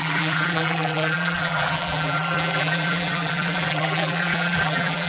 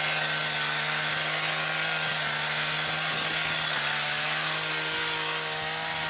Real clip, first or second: second